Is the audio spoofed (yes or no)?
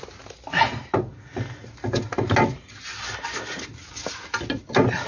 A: no